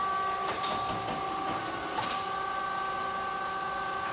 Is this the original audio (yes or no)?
yes